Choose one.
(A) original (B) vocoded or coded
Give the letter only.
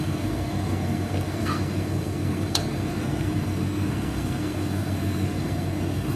B